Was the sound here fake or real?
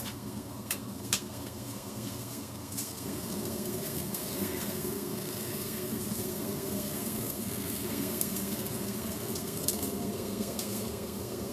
fake